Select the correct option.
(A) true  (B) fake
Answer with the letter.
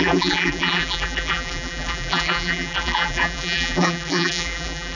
B